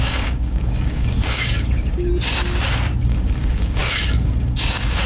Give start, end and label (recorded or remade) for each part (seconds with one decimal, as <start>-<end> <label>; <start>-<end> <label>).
0.0-2.1 remade; 2.1-3.0 recorded; 3.0-5.1 remade